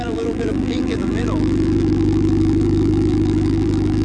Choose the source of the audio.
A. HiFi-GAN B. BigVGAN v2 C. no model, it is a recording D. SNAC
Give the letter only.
B